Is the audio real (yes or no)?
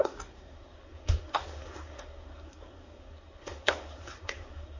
no